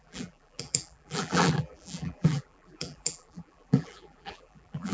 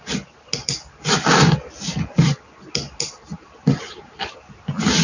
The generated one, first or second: first